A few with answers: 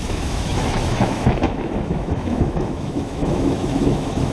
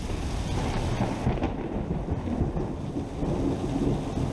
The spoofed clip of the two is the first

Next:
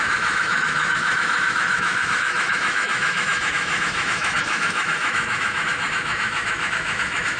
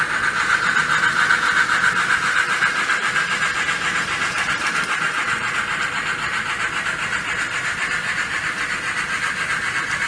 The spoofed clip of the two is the first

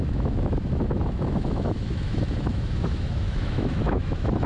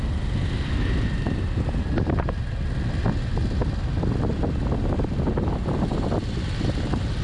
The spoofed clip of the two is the first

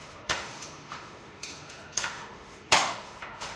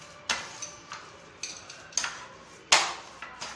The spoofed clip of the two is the first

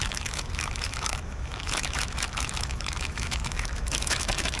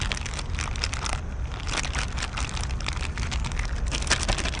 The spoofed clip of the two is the first